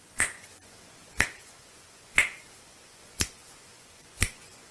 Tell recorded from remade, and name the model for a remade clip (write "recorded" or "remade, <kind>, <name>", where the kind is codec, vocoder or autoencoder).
remade, vocoder, Vocos